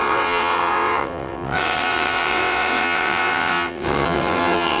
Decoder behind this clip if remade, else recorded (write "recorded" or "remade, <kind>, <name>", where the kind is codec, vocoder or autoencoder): remade, vocoder, WaveNeXt